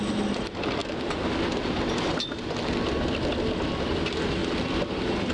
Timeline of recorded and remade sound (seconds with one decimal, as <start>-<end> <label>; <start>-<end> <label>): 0.0-5.3 recorded